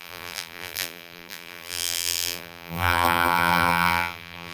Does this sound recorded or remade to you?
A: remade